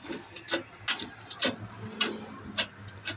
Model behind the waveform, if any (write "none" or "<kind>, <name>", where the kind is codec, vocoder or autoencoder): none